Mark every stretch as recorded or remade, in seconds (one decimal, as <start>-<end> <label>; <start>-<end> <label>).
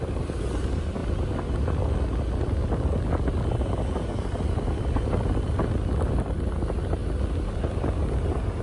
0.0-8.6 recorded